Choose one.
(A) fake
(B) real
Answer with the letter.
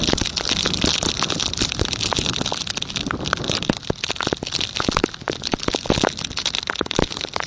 B